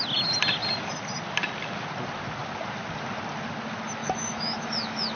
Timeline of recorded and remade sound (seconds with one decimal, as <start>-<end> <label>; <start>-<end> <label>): 0.0-4.0 recorded; 4.0-5.2 remade